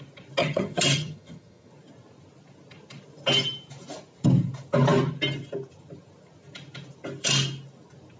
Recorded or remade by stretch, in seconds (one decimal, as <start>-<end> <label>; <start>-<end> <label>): 0.0-0.4 recorded; 0.4-1.7 remade; 1.7-8.2 recorded

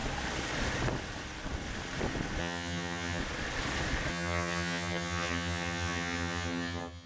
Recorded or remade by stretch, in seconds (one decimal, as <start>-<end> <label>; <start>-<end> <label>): 0.0-2.4 recorded; 2.4-3.2 remade; 3.2-4.1 recorded; 4.1-7.1 remade

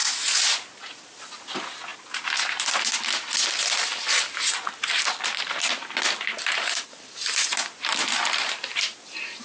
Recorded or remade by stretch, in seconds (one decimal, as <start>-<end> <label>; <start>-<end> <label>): 0.0-9.4 recorded